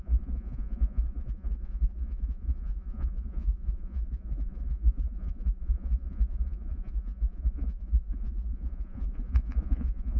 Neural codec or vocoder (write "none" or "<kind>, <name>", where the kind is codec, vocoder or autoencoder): vocoder, Vocos